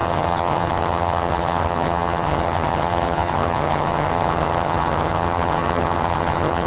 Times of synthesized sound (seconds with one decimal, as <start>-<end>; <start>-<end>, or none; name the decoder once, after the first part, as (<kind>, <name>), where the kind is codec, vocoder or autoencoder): 0.0-6.7 (vocoder, HiFi-GAN)